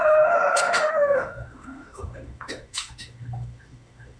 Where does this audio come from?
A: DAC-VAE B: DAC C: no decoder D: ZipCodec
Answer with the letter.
A